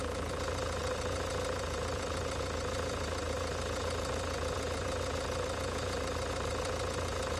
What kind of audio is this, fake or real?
fake